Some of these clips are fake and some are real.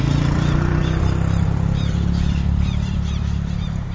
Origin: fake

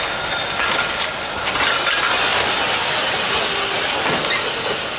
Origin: real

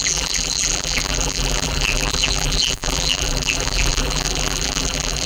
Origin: fake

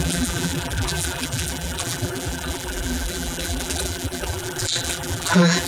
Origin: fake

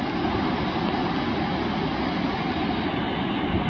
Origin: real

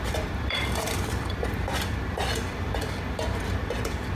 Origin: fake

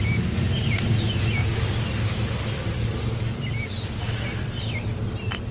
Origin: real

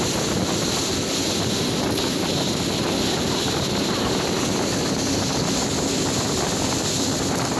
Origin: real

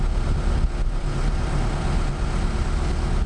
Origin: real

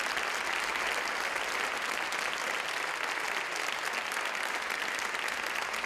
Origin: real